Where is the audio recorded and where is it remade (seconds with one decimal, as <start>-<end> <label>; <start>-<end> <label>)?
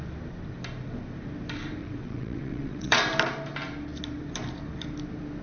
0.0-1.8 recorded; 1.8-3.0 remade; 3.0-5.4 recorded